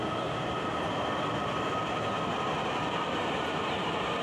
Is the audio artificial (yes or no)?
no